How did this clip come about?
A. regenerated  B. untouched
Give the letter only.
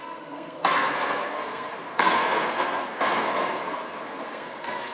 A